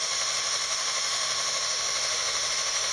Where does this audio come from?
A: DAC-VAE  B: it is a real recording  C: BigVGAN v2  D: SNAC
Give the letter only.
A